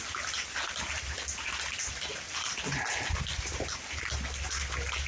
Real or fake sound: real